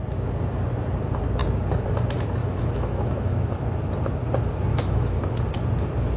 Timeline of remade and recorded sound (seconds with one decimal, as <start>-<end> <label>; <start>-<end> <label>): 0.0-2.4 recorded; 2.4-3.6 remade; 3.6-4.7 recorded; 4.7-5.2 remade; 5.2-6.2 recorded